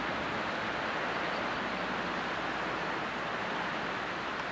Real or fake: real